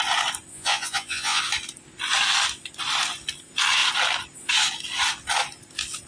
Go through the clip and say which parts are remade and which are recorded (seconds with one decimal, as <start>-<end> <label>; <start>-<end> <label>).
0.0-0.5 recorded; 0.5-1.4 remade; 1.4-6.1 recorded